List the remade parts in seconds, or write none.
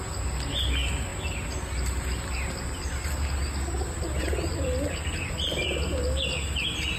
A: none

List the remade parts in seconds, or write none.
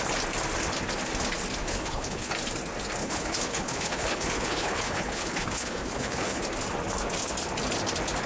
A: 1.6-2.3 (codec, HILCodec); 3.0-6.4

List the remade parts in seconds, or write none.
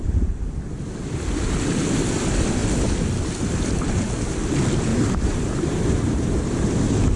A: 4.9-6.6 (vocoder, BigVGAN v2)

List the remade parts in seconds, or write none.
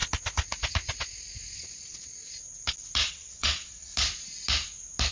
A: 3.1-3.9 (vocoder, WaveNeXt)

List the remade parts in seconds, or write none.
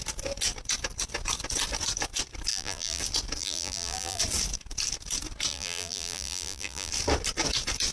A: 2.5-3.0 (vocoder, BigVGAN v2); 3.4-4.2; 5.5-6.9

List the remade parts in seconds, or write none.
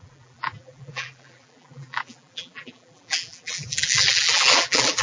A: 0.0-5.0 (vocoder, BigVGAN v2)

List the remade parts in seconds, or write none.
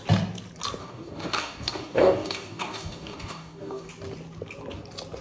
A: 0.8-3.9 (codec, DAC)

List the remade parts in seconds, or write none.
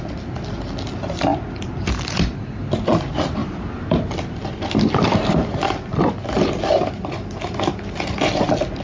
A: 1.3-2.6 (vocoder, BigVGAN v2); 3.4-6.0